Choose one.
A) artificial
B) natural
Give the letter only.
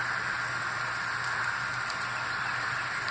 B